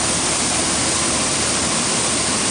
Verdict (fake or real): real